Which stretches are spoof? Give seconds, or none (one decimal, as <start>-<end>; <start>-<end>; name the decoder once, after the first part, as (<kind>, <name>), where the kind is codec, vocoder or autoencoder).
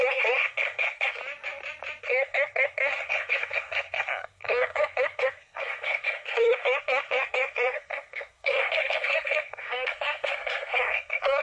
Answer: 0.0-1.2 (codec, SNAC); 2.0-11.4